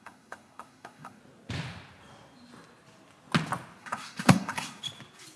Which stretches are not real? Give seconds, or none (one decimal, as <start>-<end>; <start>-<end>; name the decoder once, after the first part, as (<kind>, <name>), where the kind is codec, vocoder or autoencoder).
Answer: 0.0-1.2 (codec, SNAC); 3.8-4.8